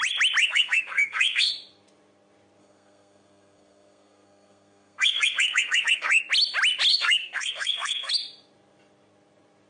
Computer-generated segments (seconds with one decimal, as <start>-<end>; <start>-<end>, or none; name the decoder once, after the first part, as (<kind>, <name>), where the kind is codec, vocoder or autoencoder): 0.4-1.5 (codec, SNAC); 2.6-6.2; 6.9-8.1